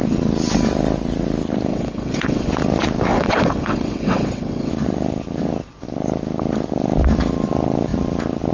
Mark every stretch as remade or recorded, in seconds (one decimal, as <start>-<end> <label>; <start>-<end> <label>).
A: 0.0-1.7 recorded; 1.7-2.5 remade; 2.5-3.1 recorded; 3.1-4.7 remade; 4.7-8.5 recorded